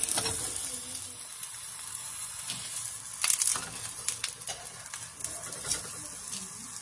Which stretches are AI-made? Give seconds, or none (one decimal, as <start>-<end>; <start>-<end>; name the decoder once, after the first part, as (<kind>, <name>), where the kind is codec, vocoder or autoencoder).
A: 2.0-2.8 (vocoder, Vocos)